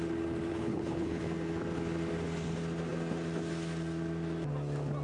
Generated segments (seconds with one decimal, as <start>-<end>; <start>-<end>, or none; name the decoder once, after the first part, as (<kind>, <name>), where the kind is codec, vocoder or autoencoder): 0.5-1.2 (codec, HILCodec)